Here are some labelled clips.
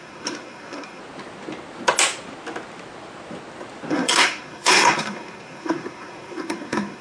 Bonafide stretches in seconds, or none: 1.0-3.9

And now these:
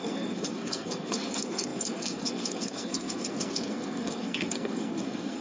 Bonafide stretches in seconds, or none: none

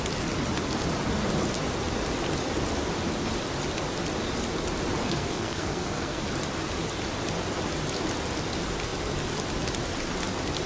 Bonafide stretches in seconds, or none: 0.0-5.0; 6.2-10.7

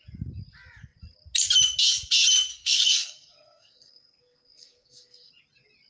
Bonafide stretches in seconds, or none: 0.0-2.5; 5.3-5.9

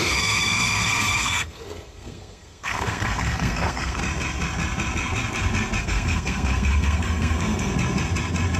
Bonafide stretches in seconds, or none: 4.0-5.8; 7.7-8.6

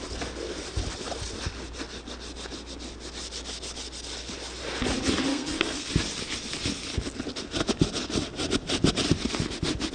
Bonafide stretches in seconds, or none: 0.0-5.3; 5.9-9.9

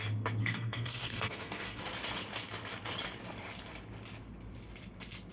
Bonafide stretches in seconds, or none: 0.0-0.4; 1.8-5.3